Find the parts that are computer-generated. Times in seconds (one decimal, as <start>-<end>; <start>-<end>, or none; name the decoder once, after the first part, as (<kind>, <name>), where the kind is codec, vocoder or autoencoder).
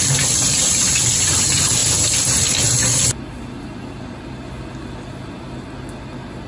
none